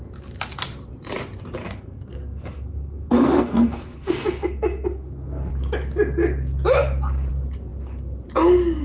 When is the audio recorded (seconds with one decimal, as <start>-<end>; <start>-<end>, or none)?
0.0-1.6; 5.5-8.8